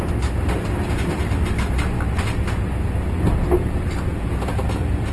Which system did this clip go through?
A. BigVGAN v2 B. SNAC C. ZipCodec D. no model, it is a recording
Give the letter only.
D